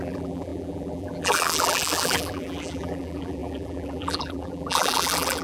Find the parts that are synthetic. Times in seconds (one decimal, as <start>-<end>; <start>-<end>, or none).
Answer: 0.0-5.4